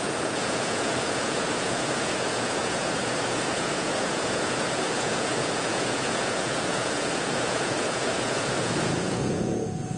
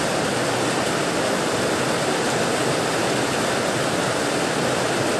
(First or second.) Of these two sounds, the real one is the second